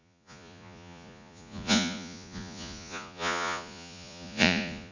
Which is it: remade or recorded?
remade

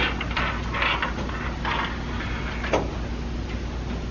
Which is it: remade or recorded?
recorded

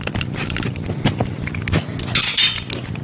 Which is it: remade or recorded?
recorded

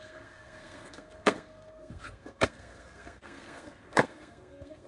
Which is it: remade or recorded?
remade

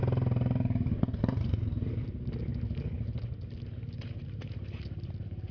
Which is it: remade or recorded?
recorded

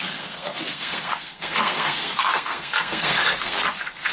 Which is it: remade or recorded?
remade